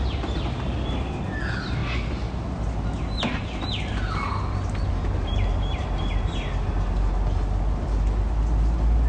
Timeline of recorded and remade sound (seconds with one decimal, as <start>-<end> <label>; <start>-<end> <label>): 0.0-9.1 recorded